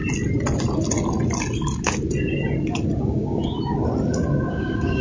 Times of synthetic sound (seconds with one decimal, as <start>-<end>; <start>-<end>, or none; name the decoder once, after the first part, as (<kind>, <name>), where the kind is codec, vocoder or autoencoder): 3.0-3.4 (codec, DAC); 4.5-5.0